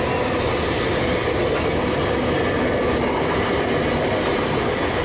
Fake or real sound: real